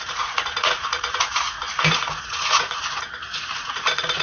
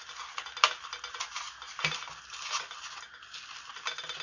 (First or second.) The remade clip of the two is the first